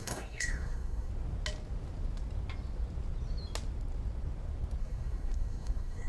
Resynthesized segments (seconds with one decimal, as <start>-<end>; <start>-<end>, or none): 0.0-1.1; 4.8-6.1